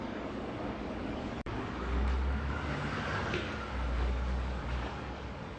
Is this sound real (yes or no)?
no